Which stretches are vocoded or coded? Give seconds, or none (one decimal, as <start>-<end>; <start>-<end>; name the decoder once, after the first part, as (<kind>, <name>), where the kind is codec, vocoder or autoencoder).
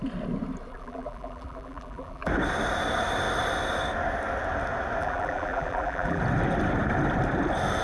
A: 0.7-2.3 (vocoder, BigVGAN v2); 5.0-6.2